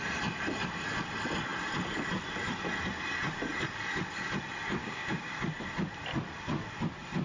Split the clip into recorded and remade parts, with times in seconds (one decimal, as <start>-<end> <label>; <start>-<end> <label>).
0.0-4.8 recorded; 4.8-5.3 remade; 5.3-7.2 recorded